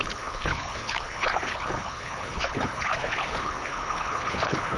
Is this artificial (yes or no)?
yes